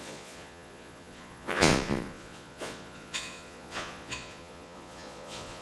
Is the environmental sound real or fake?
fake